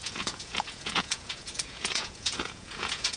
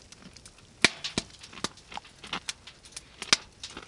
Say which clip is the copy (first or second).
first